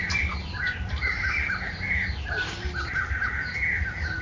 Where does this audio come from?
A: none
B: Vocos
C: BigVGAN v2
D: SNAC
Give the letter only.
A